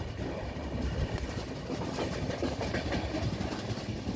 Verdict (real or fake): real